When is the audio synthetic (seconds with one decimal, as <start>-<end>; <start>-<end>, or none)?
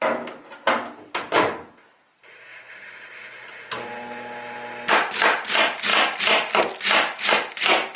none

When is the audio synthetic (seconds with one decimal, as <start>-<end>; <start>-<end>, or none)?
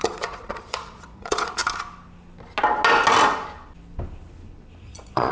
0.0-1.6; 4.8-5.3